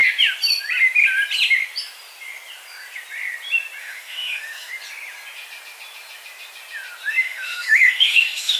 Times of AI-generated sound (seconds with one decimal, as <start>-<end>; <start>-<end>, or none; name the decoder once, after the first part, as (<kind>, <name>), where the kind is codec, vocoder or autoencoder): 3.8-4.7 (autoencoder, DAC-VAE); 7.1-8.6